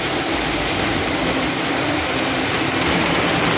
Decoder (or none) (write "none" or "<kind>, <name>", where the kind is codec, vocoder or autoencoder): none